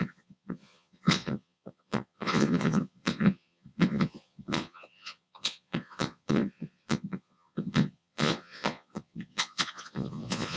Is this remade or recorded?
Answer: remade